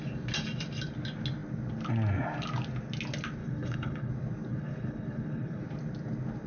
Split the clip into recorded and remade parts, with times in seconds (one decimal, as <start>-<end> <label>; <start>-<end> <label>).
0.0-3.4 recorded; 3.4-4.1 remade; 4.1-4.5 recorded; 4.5-5.6 remade; 5.6-6.5 recorded